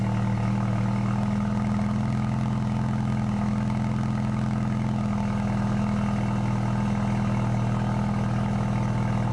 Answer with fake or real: real